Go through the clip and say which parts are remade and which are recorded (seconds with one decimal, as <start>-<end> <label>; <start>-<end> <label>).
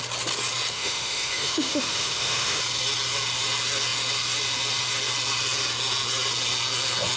0.0-0.7 recorded; 0.7-2.6 remade; 2.6-7.2 recorded